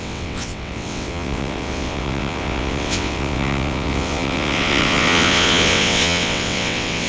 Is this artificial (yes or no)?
yes